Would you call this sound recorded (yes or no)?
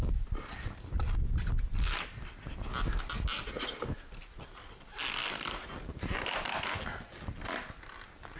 yes